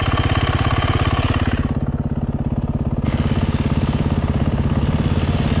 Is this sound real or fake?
real